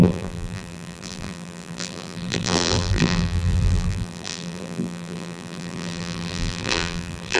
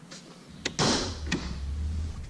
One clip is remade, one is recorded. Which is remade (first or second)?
first